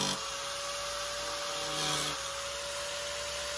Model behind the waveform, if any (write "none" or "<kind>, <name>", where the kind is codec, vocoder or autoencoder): none